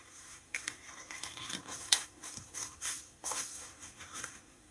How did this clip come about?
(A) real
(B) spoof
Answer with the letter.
B